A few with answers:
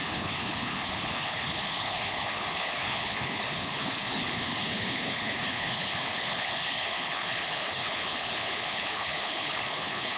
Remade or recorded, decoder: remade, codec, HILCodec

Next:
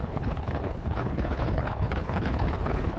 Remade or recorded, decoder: remade, codec, HILCodec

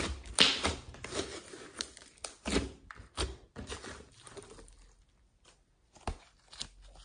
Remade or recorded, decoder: recorded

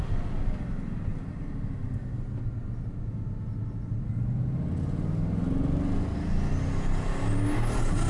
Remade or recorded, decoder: recorded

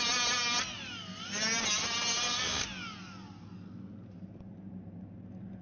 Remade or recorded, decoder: recorded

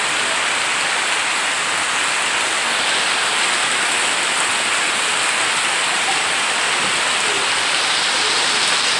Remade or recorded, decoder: recorded